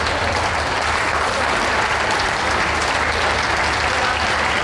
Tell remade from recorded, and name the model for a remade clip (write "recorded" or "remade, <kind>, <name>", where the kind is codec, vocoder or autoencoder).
recorded